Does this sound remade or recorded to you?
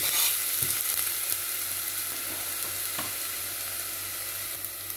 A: recorded